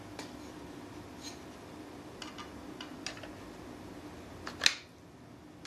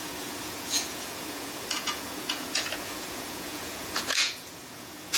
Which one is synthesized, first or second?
second